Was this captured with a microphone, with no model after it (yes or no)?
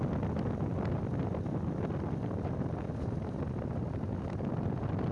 yes